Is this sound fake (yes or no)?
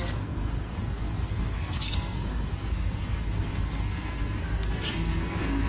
yes